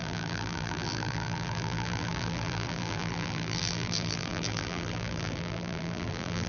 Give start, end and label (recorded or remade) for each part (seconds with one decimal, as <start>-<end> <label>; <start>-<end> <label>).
0.0-6.5 remade